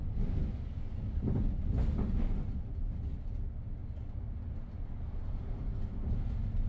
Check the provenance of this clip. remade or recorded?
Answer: recorded